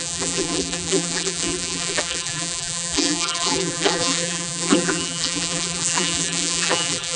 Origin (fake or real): fake